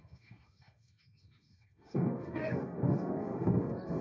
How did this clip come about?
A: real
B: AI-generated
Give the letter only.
B